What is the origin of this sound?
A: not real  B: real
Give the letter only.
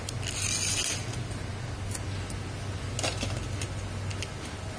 B